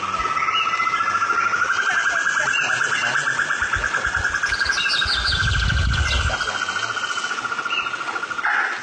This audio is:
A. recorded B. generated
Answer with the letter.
A